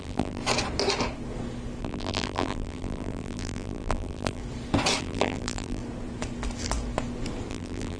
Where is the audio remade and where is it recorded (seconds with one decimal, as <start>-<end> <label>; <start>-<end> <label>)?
0.0-0.4 remade; 0.4-1.8 recorded; 1.8-4.4 remade; 4.4-5.0 recorded; 5.0-5.8 remade; 5.8-7.5 recorded; 7.5-8.0 remade